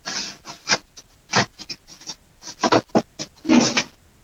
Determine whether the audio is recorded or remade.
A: recorded